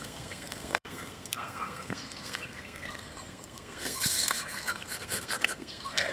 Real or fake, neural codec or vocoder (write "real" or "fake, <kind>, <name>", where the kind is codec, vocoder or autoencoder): fake, codec, SNAC